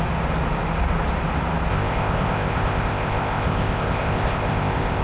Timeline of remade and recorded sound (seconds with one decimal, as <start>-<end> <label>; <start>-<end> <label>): 0.0-1.7 recorded; 1.7-5.0 remade